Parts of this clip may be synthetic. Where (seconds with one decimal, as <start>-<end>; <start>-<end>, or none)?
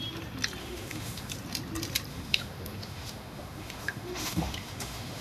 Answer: 0.6-1.3; 2.1-5.2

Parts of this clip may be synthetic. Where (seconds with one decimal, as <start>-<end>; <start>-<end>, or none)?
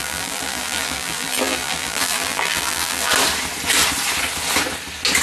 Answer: 0.0-3.1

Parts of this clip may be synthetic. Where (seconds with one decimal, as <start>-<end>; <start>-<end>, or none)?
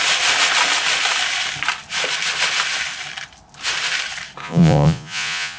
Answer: 4.4-5.6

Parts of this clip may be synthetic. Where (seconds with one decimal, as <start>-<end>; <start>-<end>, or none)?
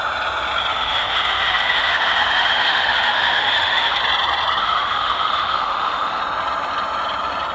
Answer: 0.7-4.0; 4.6-6.2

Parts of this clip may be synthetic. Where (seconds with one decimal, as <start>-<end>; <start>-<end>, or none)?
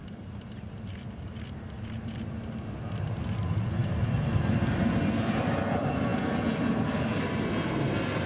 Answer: none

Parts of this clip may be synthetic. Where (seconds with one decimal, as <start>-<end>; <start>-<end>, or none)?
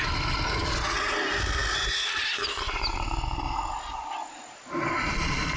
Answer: none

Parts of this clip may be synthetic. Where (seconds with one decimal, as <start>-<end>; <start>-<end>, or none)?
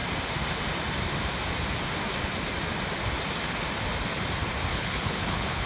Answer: 4.7-5.7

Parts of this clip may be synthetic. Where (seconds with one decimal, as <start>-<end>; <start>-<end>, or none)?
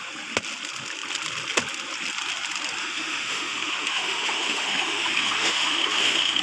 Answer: 2.8-6.4